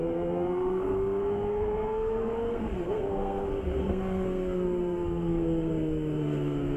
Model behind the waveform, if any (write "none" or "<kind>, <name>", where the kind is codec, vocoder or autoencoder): codec, SNAC